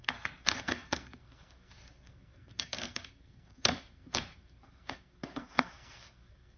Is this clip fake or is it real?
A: fake